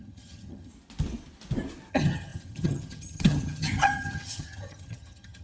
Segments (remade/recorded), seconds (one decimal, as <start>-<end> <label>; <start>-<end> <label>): 0.0-0.7 remade; 0.7-1.9 recorded; 1.9-5.4 remade